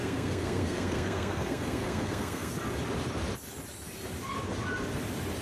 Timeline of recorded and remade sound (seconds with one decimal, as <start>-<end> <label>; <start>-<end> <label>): 0.0-2.5 remade; 2.5-5.4 recorded